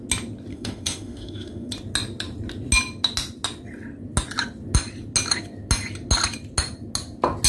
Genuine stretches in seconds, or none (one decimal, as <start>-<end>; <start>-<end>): 0.0-0.5; 1.7-7.5